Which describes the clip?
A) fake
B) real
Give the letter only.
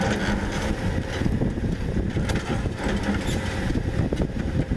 B